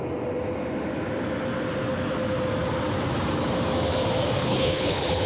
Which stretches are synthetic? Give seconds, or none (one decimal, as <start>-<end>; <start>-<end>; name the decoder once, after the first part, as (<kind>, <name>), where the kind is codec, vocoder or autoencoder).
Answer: 4.4-5.3 (codec, HILCodec)